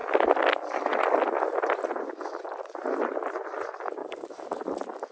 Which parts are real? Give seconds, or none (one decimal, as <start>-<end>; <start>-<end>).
0.0-4.0; 4.6-5.1